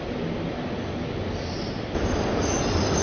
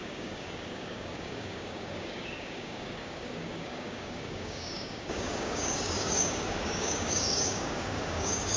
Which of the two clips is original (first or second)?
first